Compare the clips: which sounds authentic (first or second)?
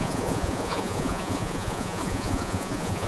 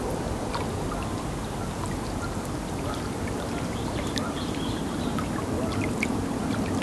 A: second